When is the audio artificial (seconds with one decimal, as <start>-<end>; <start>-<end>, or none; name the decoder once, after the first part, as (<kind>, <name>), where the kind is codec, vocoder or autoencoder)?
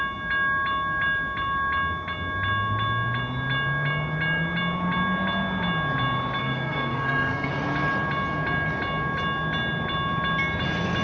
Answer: 6.4-7.5 (codec, SNAC)